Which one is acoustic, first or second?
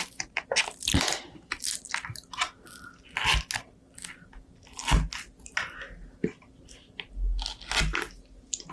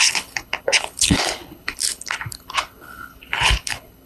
first